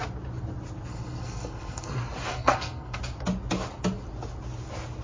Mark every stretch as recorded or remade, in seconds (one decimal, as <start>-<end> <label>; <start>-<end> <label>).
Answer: 0.0-0.9 recorded; 0.9-1.9 remade; 1.9-2.3 recorded; 2.3-3.0 remade; 3.0-5.0 recorded

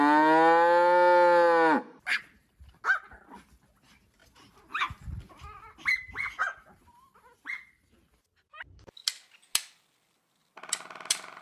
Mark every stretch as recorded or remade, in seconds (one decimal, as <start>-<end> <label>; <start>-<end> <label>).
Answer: 0.0-11.4 recorded

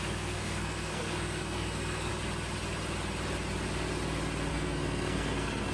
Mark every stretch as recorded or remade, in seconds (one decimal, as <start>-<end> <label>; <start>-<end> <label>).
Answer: 0.0-2.1 remade; 2.1-4.5 recorded; 4.5-5.7 remade

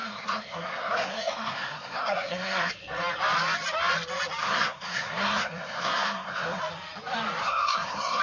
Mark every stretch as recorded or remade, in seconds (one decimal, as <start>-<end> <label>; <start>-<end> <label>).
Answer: 0.0-2.7 remade; 2.7-4.4 recorded; 4.4-6.6 remade; 6.6-7.4 recorded; 7.4-8.2 remade

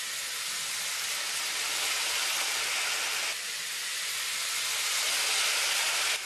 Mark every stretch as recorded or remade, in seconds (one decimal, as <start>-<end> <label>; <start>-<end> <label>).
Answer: 0.0-6.3 recorded

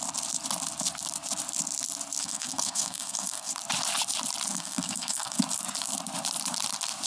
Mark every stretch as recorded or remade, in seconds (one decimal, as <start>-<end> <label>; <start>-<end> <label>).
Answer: 0.0-2.2 recorded; 2.2-3.5 remade; 3.5-4.5 recorded; 4.5-5.4 remade; 5.4-7.1 recorded

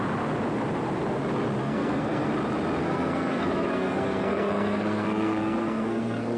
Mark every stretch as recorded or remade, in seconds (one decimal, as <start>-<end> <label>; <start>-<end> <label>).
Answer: 0.0-1.6 recorded; 1.6-2.3 remade; 2.3-2.8 recorded; 2.8-6.4 remade

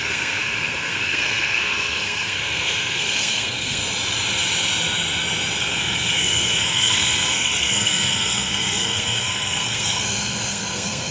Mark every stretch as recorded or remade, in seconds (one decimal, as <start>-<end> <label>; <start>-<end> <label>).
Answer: 0.0-3.8 remade; 3.8-5.6 recorded; 5.6-11.1 remade